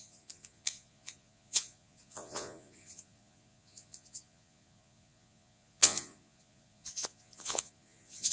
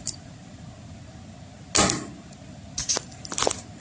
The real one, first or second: second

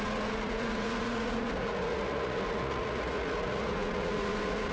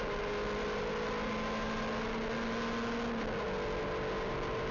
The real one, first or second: second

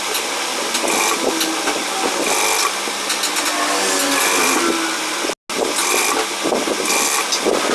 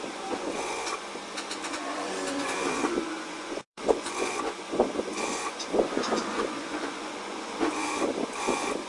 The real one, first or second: first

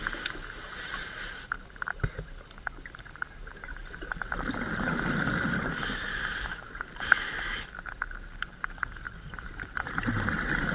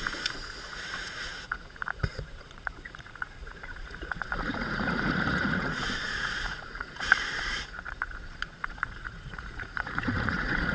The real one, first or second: first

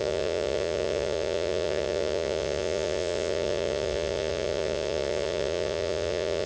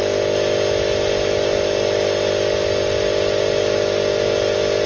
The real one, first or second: second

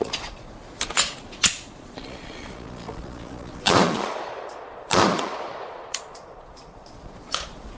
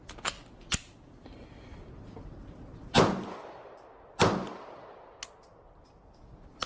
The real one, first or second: second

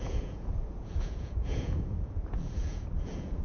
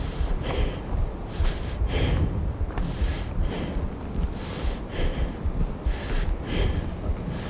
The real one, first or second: second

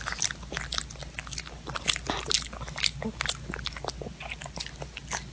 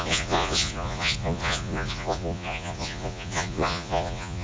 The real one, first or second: first